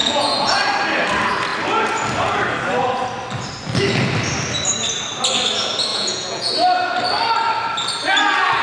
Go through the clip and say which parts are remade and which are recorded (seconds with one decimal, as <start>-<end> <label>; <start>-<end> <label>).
0.0-0.7 remade; 0.7-5.9 recorded; 5.9-6.5 remade; 6.5-8.6 recorded